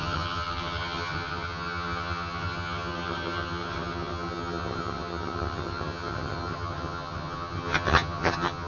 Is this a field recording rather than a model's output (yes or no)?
no